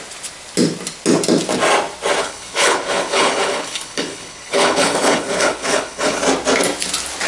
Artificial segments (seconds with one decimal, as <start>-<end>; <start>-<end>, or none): 2.2-6.2